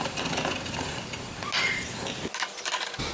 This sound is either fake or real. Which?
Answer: real